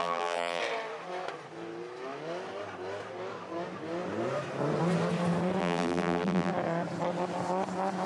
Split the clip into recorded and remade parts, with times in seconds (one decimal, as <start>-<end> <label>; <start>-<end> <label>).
0.0-0.6 remade; 0.6-5.6 recorded; 5.6-6.5 remade; 6.5-8.1 recorded